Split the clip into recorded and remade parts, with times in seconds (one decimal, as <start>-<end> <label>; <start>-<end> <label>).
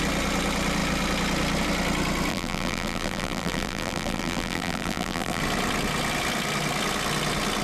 0.0-2.3 recorded; 2.3-5.4 remade; 5.4-7.6 recorded